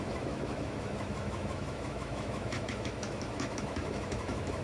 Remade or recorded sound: remade